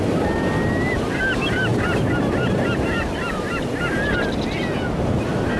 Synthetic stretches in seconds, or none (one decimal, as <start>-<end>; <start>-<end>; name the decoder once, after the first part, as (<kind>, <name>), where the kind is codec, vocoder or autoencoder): none